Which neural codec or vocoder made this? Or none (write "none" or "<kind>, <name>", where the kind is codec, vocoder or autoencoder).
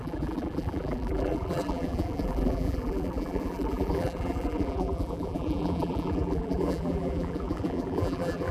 vocoder, BigVGAN v2